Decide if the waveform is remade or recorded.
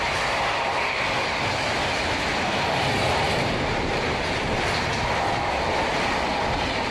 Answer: recorded